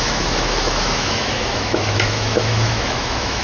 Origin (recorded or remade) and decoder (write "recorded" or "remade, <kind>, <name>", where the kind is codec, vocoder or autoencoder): remade, autoencoder, DAC-VAE